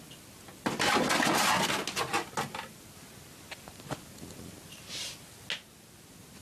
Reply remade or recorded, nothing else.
recorded